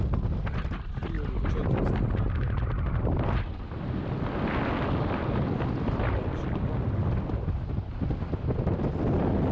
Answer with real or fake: real